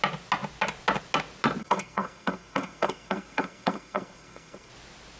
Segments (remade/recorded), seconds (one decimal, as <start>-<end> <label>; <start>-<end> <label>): 0.0-1.6 recorded; 1.6-4.7 remade; 4.7-5.2 recorded